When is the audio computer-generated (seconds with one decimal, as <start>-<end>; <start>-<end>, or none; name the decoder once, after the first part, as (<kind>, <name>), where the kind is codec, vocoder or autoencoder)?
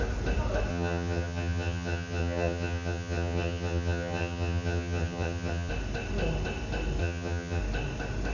0.7-5.7 (vocoder, HiFi-GAN); 7.0-7.6